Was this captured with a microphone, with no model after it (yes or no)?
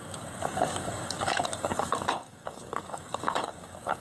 no